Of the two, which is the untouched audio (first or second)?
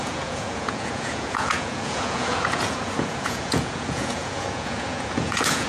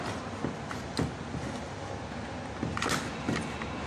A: second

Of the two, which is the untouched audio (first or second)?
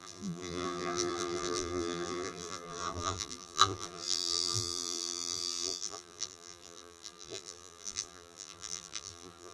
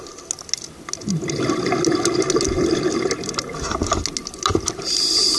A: second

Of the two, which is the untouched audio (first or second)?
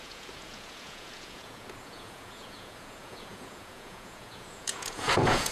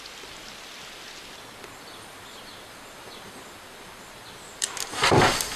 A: second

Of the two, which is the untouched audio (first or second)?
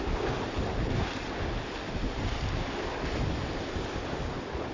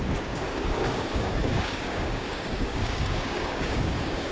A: first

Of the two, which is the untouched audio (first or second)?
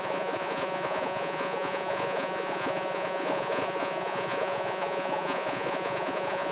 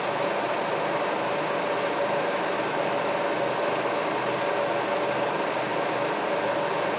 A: second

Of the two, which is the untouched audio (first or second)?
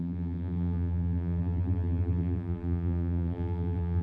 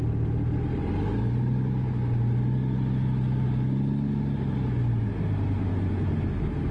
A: second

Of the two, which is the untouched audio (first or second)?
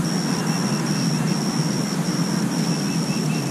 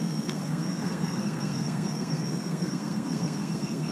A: first